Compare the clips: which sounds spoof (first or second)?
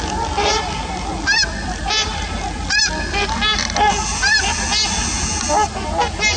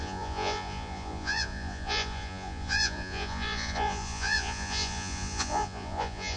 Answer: second